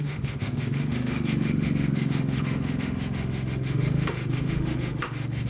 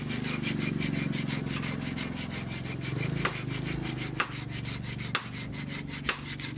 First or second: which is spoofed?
first